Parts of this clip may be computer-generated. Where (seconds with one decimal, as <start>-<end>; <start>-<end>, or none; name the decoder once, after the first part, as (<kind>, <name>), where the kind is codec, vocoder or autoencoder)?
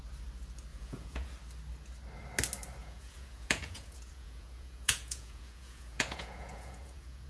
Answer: 0.7-1.3 (vocoder, Vocos); 2.8-7.3